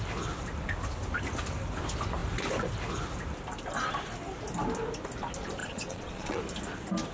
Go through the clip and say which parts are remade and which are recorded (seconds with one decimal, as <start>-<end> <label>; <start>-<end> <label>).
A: 0.0-5.6 recorded; 5.6-6.4 remade; 6.4-7.1 recorded